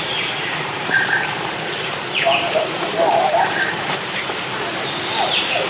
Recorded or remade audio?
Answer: remade